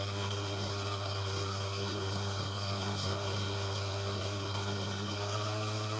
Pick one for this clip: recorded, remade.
remade